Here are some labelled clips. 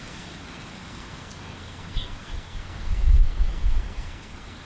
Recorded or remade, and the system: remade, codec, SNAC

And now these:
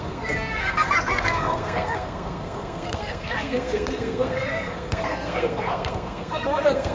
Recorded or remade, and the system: remade, codec, SNAC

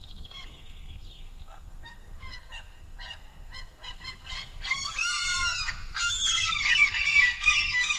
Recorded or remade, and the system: remade, codec, SNAC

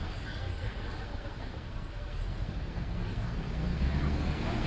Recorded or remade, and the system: remade, codec, SNAC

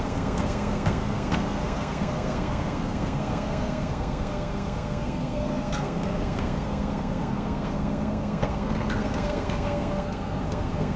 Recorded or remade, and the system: remade, codec, SNAC